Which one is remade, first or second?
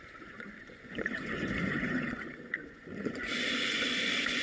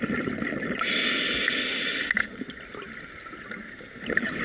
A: first